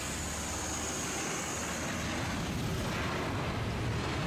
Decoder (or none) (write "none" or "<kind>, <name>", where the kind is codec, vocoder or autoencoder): none